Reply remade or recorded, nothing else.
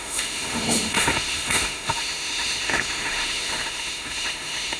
remade